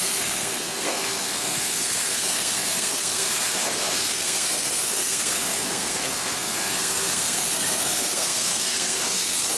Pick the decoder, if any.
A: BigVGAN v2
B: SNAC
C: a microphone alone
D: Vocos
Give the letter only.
B